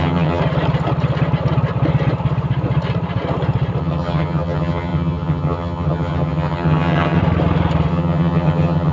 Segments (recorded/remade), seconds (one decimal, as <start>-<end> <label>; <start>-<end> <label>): 0.0-0.4 remade; 0.4-3.8 recorded; 3.8-7.2 remade; 7.2-7.9 recorded; 7.9-8.9 remade